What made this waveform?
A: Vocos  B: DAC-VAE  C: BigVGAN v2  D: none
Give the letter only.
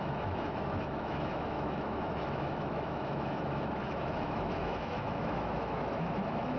B